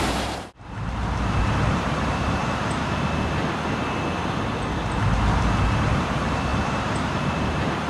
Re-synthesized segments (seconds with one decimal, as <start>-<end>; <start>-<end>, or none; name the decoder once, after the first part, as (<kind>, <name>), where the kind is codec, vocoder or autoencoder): 0.0-2.4 (vocoder, BigVGAN v2); 5.8-7.9